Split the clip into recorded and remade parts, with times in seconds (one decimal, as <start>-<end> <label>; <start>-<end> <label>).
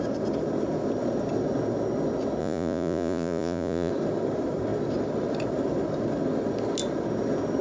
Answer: 0.0-2.4 recorded; 2.4-3.9 remade; 3.9-7.6 recorded